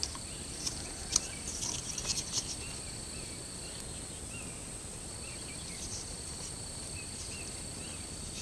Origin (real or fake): real